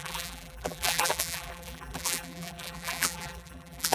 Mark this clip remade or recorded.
remade